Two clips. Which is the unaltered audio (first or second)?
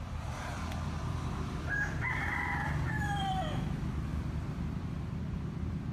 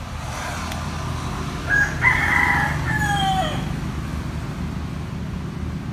second